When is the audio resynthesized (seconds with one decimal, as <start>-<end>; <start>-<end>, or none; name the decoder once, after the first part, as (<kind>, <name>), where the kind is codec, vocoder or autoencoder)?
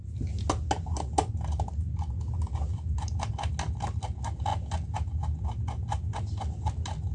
none